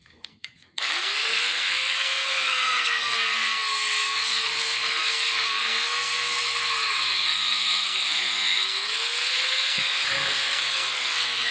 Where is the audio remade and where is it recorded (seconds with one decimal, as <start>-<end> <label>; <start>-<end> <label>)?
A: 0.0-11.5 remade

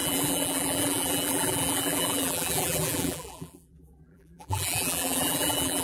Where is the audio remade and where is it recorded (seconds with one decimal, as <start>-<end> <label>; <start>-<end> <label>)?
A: 0.0-5.8 remade

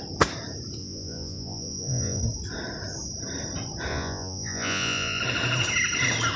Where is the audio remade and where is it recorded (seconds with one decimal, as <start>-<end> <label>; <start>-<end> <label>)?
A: 0.0-0.8 recorded; 0.8-2.2 remade; 2.2-3.9 recorded; 3.9-5.2 remade; 5.2-6.4 recorded

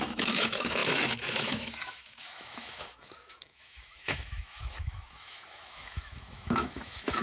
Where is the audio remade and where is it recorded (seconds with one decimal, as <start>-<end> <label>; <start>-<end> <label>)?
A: 0.0-7.2 remade

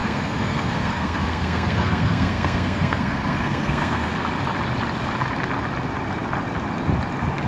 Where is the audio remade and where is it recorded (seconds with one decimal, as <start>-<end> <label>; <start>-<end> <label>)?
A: 0.0-4.1 remade; 4.1-7.5 recorded

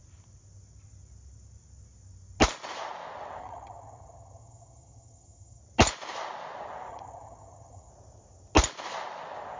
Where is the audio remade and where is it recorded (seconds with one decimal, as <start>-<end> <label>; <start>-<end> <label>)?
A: 0.0-3.4 recorded; 3.4-5.6 remade; 5.6-6.9 recorded; 6.9-7.9 remade; 7.9-9.6 recorded

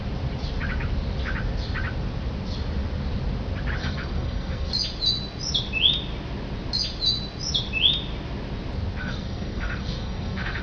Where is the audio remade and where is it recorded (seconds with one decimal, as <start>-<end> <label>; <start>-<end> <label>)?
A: 0.0-3.8 recorded; 3.8-4.7 remade; 4.7-9.0 recorded; 9.0-10.6 remade